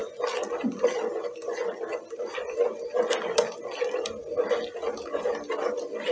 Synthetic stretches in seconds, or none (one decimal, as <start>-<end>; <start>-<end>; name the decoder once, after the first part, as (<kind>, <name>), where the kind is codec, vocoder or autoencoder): none